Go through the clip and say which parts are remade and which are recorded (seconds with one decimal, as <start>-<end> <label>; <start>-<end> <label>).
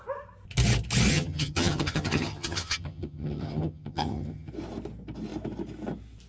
0.0-1.1 recorded; 1.1-4.5 remade; 4.5-6.3 recorded